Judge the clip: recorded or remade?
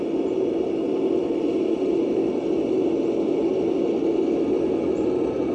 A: recorded